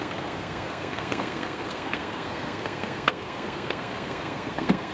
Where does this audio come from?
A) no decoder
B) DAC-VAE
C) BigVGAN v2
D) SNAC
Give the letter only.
D